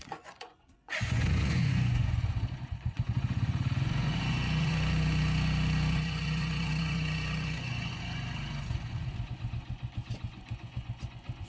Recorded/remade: remade